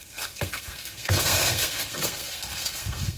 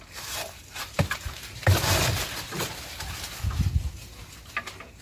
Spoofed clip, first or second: first